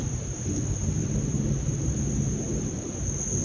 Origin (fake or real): real